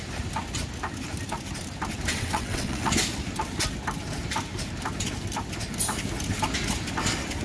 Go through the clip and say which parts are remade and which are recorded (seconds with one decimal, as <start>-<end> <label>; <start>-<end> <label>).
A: 0.0-2.1 recorded; 2.1-2.9 remade; 2.9-7.4 recorded